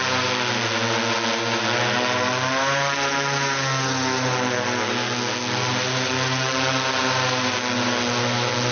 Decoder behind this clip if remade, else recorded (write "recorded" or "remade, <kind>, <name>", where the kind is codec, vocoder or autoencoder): recorded